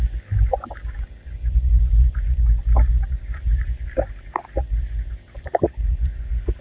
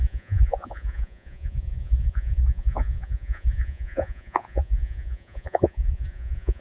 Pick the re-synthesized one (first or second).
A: second